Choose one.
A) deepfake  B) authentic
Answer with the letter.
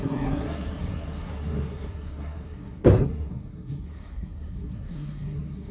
A